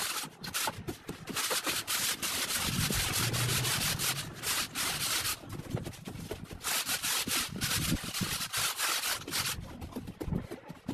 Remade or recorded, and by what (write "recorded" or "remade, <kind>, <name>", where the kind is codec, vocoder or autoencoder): recorded